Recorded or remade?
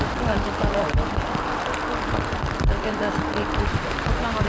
recorded